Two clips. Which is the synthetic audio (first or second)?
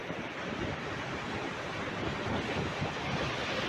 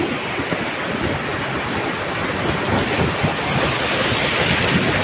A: first